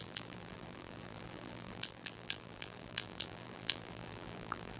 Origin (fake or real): fake